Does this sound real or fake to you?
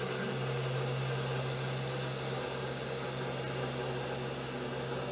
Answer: real